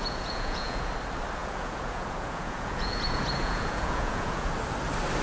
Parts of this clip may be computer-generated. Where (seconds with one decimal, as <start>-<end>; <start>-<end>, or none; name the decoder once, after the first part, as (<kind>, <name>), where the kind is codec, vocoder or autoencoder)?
0.0-0.9 (vocoder, Vocos); 1.4-4.5